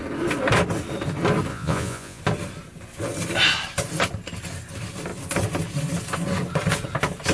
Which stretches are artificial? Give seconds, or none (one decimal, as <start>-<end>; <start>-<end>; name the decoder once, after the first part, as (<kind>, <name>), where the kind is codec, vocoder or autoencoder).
1.5-2.2 (vocoder, Vocos)